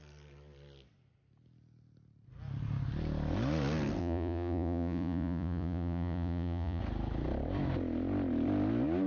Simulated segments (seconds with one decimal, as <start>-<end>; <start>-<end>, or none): 4.0-6.8